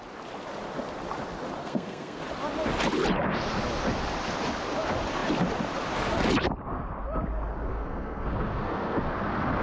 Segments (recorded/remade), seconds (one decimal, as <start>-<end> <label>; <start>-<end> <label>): 0.0-1.6 recorded; 1.6-2.2 remade; 2.2-7.7 recorded; 7.7-9.1 remade; 9.1-9.6 recorded